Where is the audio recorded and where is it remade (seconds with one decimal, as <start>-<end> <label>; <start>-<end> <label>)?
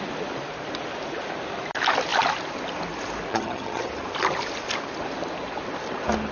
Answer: 0.0-3.3 recorded; 3.3-3.9 remade; 3.9-6.3 recorded